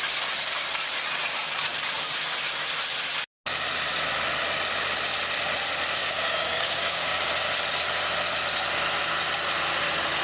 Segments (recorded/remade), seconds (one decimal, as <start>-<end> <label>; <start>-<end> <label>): 0.0-6.0 recorded; 6.0-7.3 remade; 7.3-10.2 recorded